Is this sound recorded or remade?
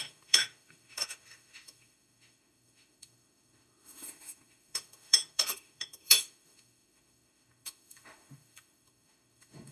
remade